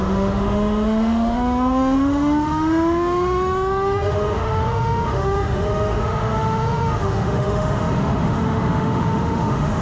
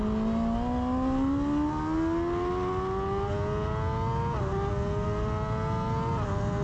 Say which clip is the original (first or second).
second